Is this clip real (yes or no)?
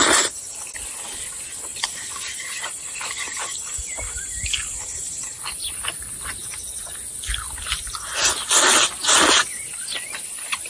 yes